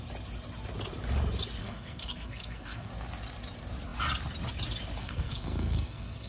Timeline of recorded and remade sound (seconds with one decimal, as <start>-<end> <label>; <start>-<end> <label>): 0.0-1.6 recorded; 1.6-2.9 remade; 2.9-5.0 recorded; 5.0-6.3 remade